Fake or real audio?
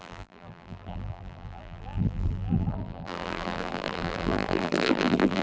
fake